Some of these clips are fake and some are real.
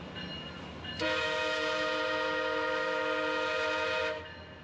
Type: real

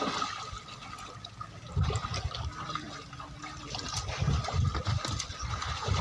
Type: real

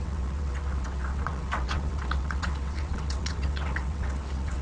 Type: fake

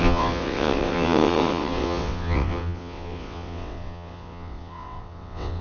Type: fake